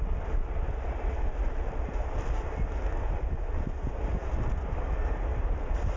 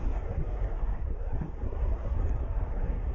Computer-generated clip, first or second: second